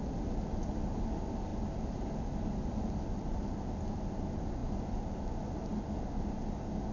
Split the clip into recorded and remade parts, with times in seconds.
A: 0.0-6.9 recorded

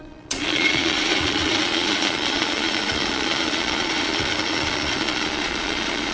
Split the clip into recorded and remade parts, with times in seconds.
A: 0.0-6.1 remade

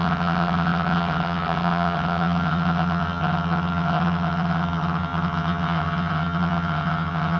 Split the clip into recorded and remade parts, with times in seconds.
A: 0.0-7.4 remade

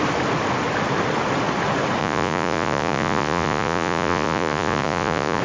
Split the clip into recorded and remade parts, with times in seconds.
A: 0.0-2.0 recorded; 2.0-5.4 remade

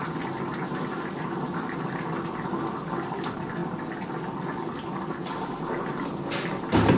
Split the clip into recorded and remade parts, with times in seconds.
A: 0.0-7.0 recorded